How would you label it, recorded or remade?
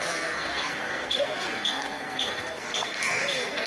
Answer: remade